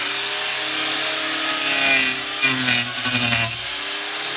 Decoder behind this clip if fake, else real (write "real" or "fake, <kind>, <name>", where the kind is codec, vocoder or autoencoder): real